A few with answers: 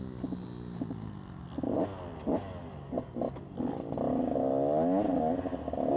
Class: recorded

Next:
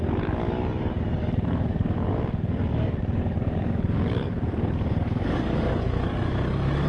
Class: remade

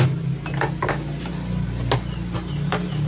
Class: recorded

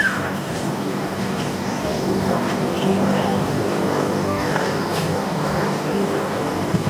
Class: remade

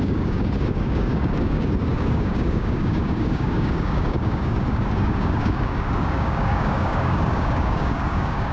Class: remade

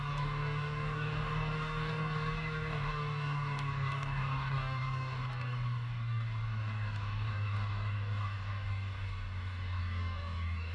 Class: remade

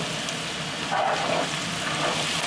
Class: recorded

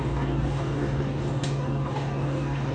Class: remade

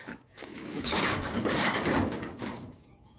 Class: remade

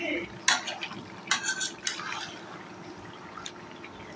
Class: recorded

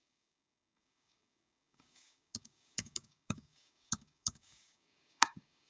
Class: remade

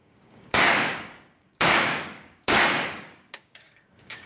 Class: remade